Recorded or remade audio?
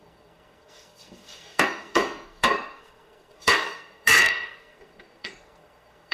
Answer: remade